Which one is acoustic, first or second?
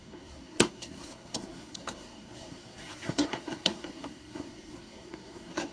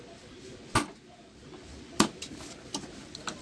second